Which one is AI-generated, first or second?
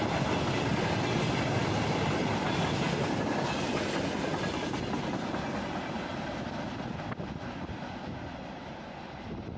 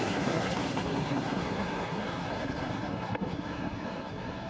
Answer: second